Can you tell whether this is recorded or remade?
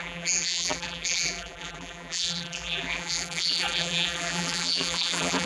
remade